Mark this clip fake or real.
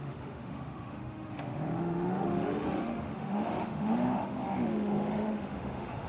fake